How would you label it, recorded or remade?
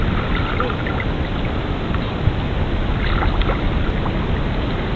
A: recorded